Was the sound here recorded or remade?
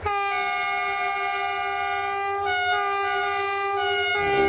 recorded